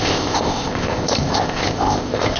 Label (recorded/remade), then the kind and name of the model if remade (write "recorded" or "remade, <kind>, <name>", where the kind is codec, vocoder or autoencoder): remade, codec, ZipCodec